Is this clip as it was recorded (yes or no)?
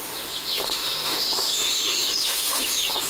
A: no